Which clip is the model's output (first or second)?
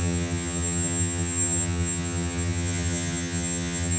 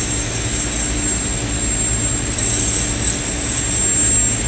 first